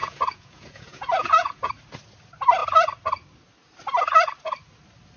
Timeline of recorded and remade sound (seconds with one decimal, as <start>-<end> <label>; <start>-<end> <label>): 0.0-1.7 remade; 1.7-5.2 recorded